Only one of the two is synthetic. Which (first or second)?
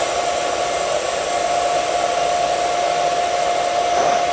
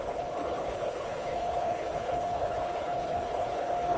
second